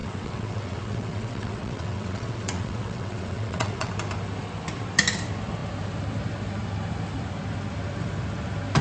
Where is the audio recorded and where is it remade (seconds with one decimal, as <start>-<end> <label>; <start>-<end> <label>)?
0.0-3.9 remade; 3.9-8.8 recorded